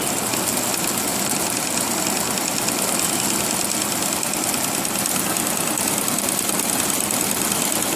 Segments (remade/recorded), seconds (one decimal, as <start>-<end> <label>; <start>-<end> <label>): 0.0-1.1 recorded; 1.1-2.0 remade; 2.0-8.0 recorded